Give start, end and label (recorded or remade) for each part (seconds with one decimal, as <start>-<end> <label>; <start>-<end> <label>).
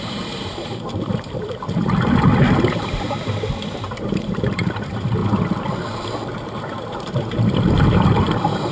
0.0-1.8 remade; 1.8-2.5 recorded; 2.5-5.2 remade; 5.2-6.6 recorded; 6.6-8.7 remade